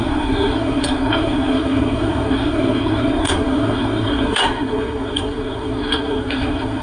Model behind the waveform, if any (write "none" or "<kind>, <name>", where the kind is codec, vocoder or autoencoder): codec, SNAC